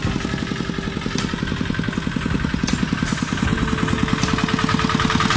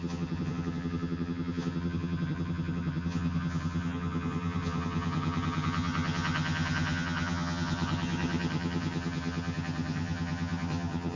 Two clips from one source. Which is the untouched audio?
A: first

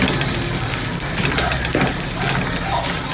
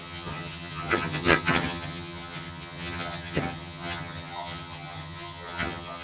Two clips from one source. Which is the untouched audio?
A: first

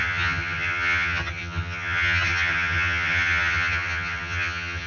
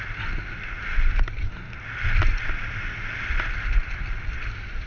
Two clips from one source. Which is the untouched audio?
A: second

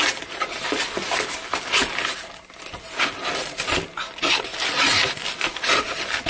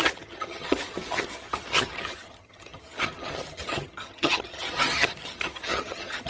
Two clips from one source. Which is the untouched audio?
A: first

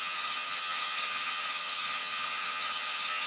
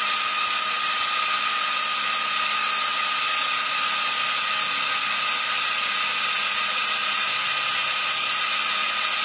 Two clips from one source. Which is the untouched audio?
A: second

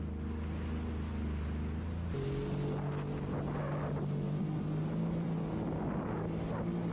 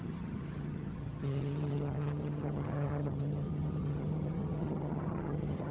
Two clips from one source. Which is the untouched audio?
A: first